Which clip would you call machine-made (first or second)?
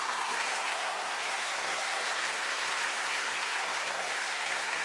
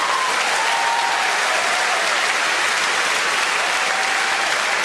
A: first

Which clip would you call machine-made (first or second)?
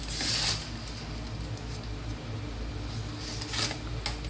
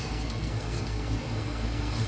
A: second